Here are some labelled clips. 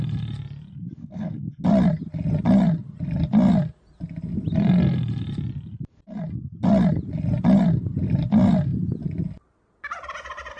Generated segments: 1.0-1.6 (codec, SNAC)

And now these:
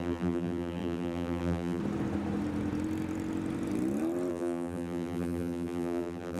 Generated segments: 0.0-1.8 (vocoder, BigVGAN v2); 4.3-6.4

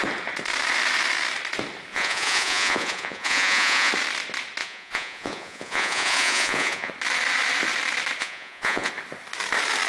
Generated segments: 1.9-3.9 (vocoder, Vocos); 4.6-6.9; 8.2-8.9

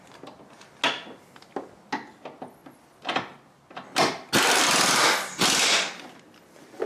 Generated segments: none

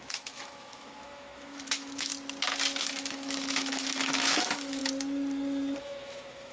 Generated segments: 0.0-2.1 (autoencoder, DAC-VAE); 2.8-4.8; 5.8-6.5

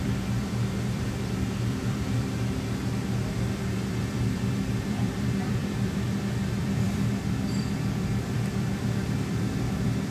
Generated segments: 0.0-10.1 (vocoder, BigVGAN v2)